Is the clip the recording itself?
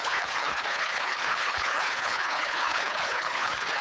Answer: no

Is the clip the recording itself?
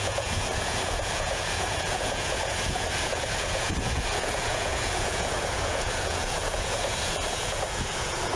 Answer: no